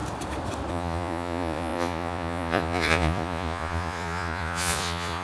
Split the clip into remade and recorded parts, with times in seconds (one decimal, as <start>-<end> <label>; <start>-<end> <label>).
0.0-0.7 recorded; 0.7-5.2 remade